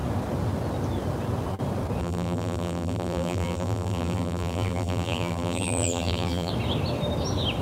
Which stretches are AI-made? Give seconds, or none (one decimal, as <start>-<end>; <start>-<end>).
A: 2.0-6.5